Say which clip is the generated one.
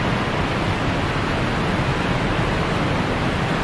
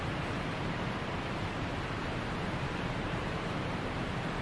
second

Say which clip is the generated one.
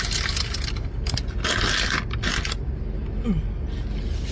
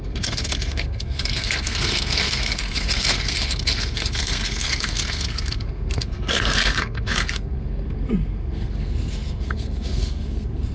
second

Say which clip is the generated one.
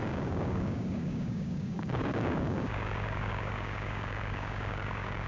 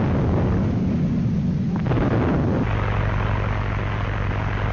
first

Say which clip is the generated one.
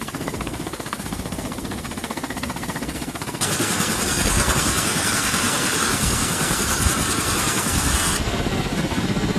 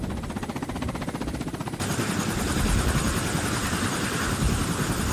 first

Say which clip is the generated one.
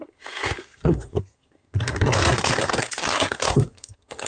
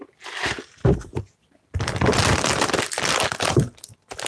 first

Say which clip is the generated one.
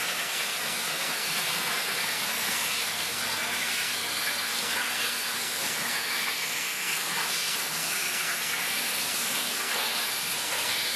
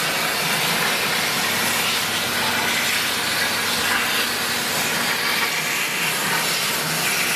first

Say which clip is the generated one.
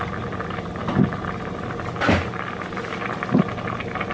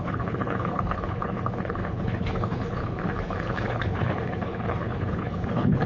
second